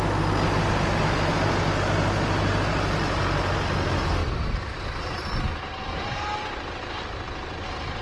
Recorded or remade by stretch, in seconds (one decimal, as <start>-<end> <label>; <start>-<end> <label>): 0.0-4.2 recorded; 4.2-4.8 remade; 4.8-8.0 recorded